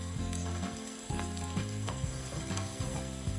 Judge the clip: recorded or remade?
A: remade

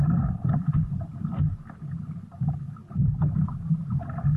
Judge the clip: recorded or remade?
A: recorded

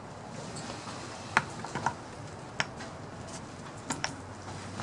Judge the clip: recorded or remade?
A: recorded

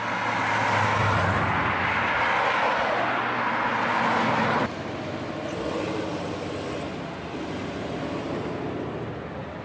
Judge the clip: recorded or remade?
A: recorded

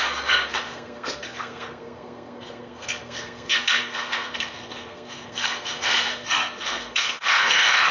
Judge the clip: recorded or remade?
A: remade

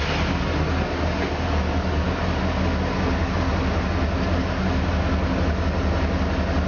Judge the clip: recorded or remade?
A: recorded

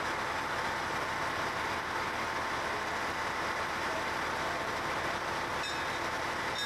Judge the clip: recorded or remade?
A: recorded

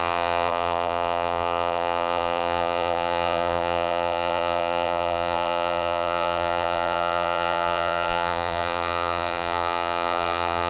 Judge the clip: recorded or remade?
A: remade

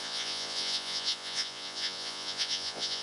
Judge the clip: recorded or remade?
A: remade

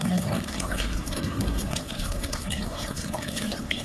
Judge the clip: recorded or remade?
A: remade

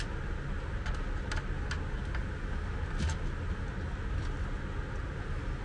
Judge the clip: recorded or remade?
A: recorded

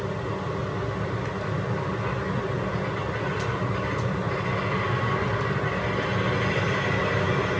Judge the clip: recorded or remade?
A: recorded